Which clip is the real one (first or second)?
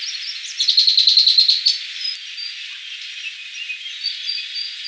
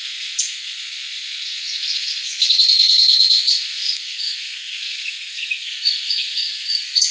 first